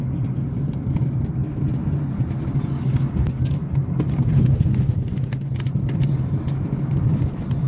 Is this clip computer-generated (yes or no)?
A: no